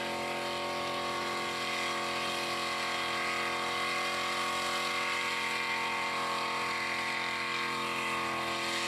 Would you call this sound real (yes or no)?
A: yes